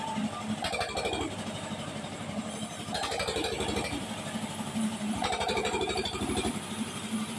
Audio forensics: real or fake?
fake